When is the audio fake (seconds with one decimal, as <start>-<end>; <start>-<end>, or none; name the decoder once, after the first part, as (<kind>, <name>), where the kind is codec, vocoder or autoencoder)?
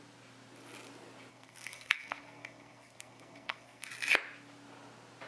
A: 1.3-3.9 (codec, SNAC)